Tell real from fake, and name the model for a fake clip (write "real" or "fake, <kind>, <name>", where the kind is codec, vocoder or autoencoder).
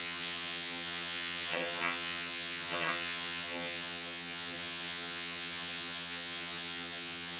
fake, vocoder, HiFi-GAN